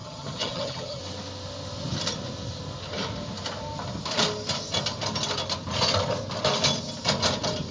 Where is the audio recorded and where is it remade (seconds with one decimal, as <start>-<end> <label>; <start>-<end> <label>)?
0.0-1.0 remade; 1.0-7.7 recorded